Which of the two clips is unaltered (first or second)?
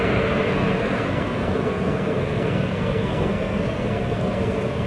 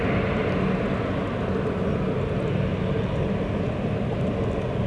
second